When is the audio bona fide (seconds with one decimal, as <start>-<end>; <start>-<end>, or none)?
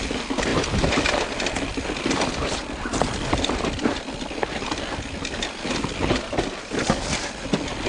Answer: 0.0-7.9